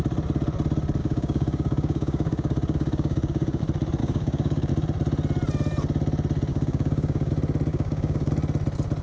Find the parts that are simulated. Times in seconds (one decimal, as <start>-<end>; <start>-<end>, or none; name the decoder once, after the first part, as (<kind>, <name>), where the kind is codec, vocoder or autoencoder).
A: 1.0-3.6 (codec, DAC); 4.0-4.7; 6.5-7.3; 7.7-8.3